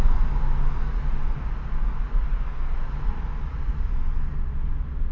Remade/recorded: recorded